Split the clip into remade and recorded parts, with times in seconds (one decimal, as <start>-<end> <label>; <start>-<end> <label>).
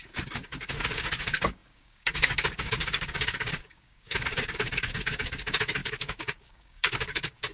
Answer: 0.0-7.5 remade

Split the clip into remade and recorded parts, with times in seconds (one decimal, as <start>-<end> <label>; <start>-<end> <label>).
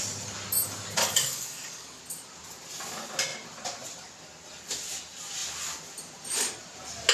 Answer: 0.0-1.0 recorded; 1.0-2.0 remade; 2.0-7.1 recorded